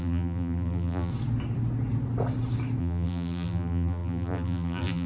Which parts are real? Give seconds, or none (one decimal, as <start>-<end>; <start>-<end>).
1.1-2.8